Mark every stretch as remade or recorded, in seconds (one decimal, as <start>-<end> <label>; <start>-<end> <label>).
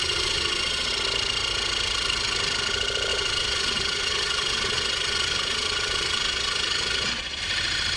0.0-0.9 remade; 0.9-3.1 recorded; 3.1-7.4 remade; 7.4-8.0 recorded